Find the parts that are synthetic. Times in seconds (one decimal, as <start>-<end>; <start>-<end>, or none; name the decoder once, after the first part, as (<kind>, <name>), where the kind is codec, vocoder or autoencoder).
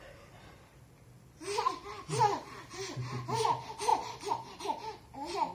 3.9-4.6 (vocoder, BigVGAN v2)